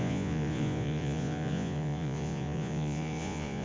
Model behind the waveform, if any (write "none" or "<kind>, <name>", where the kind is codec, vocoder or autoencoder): vocoder, Vocos